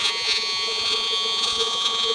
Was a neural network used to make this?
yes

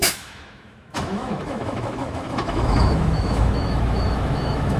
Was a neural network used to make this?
yes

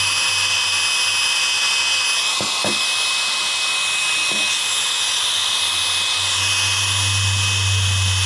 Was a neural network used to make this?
no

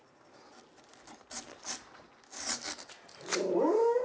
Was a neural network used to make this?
no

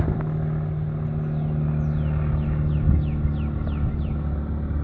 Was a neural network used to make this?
no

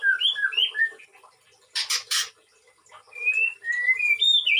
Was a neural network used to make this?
yes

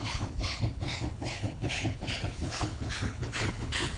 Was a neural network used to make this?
yes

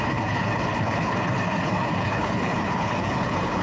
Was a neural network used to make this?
yes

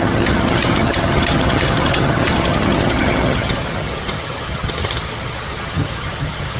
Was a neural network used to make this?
yes